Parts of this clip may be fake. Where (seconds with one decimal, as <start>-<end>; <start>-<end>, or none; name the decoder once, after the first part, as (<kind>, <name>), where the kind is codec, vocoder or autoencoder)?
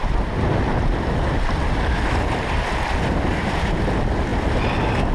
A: 0.7-2.9 (vocoder, BigVGAN v2)